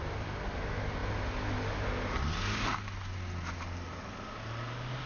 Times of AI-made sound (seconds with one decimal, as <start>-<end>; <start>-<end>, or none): none